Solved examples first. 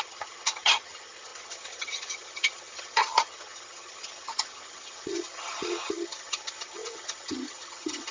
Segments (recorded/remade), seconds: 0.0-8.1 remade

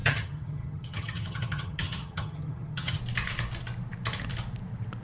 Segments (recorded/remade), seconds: 0.0-3.0 remade; 3.0-5.0 recorded

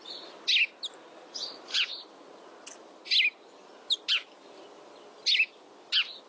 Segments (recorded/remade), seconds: 0.0-6.3 recorded